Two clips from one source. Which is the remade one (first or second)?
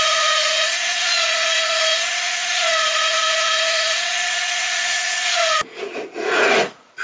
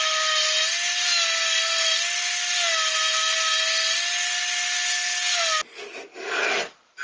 first